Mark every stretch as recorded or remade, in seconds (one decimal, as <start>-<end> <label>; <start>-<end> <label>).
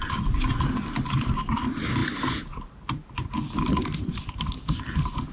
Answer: 0.0-5.3 recorded